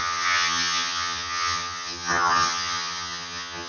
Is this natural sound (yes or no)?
no